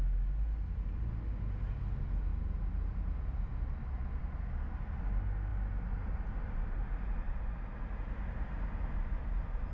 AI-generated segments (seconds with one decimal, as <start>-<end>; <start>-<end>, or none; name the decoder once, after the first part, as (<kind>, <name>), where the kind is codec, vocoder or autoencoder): none